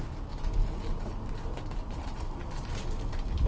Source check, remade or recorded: recorded